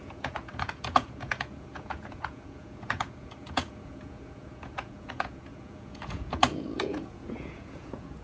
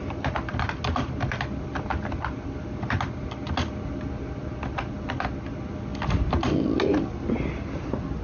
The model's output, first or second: first